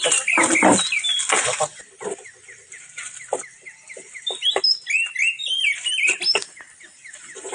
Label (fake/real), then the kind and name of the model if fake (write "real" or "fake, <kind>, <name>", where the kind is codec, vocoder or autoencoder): real